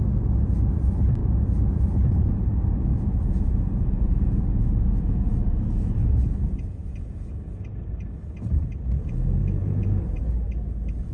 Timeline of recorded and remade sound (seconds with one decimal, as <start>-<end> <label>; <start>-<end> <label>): 0.0-2.9 recorded; 2.9-7.3 remade; 7.3-9.4 recorded; 9.4-10.0 remade; 10.0-11.1 recorded